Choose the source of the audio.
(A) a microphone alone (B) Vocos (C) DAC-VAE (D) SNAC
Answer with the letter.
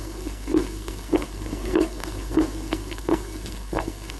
D